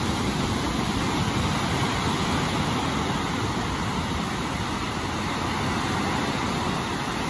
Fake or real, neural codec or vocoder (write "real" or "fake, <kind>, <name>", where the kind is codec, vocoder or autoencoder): real